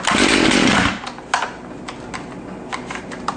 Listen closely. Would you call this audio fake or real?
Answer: real